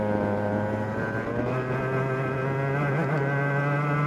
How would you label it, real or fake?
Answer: real